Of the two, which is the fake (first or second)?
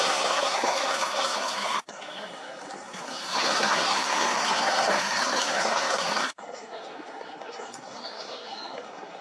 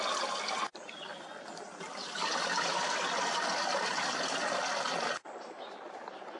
first